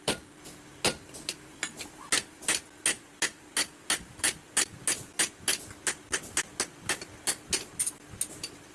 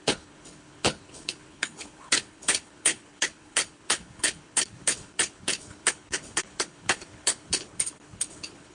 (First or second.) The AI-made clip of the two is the second